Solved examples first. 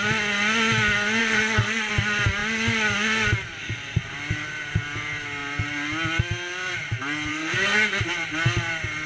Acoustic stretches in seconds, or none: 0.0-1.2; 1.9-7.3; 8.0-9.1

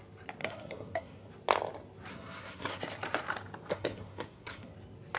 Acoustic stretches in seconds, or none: 0.0-0.4; 1.3-2.1; 2.8-3.7; 4.7-5.2

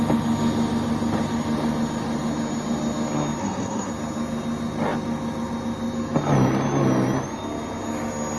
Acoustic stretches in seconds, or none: 0.0-3.4; 3.9-8.4